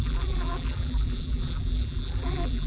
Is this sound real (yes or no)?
no